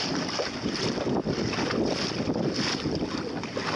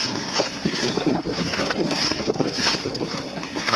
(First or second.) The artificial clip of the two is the second